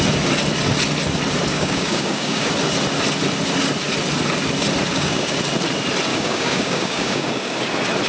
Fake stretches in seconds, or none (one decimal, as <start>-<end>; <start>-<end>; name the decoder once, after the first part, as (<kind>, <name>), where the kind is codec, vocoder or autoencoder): 1.5-2.5 (codec, DAC); 4.9-5.4; 6.1-7.6